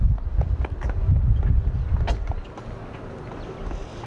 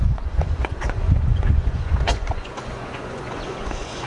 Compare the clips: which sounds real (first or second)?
first